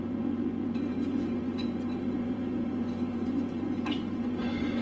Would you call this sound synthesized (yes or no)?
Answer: yes